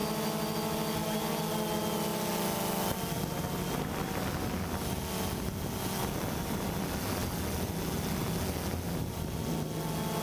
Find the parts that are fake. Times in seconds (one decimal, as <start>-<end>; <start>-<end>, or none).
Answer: none